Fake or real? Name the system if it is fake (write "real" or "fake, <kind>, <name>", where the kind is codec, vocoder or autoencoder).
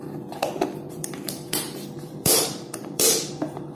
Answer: fake, vocoder, BigVGAN v2